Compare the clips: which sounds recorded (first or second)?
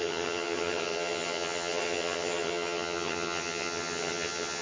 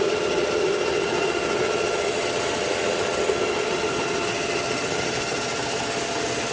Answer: second